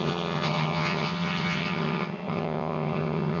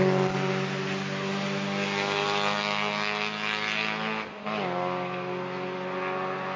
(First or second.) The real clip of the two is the second